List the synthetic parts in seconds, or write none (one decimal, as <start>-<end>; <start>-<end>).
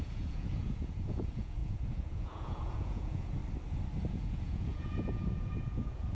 0.0-3.4; 4.1-6.1